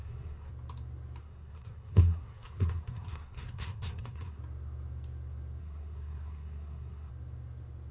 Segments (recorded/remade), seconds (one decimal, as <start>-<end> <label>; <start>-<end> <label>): 0.0-0.5 remade; 0.5-1.2 recorded; 1.2-4.4 remade; 4.4-5.6 recorded; 5.6-7.1 remade; 7.1-7.9 recorded